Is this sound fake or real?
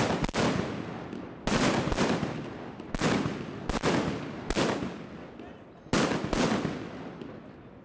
real